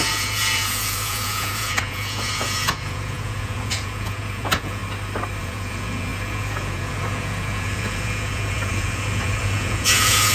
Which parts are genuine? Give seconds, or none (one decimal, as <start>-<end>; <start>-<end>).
4.8-5.4